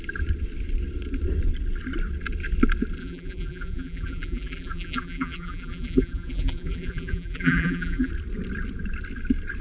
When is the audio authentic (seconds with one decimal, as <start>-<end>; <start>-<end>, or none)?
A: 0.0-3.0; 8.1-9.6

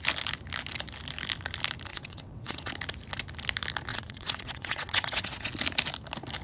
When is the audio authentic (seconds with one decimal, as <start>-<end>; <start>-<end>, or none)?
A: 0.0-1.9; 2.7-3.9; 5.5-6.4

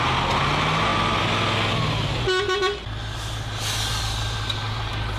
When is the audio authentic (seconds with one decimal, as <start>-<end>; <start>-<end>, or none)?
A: 0.0-5.2

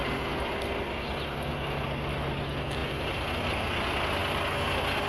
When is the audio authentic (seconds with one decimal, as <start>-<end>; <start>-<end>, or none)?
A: 0.0-2.8; 3.4-5.1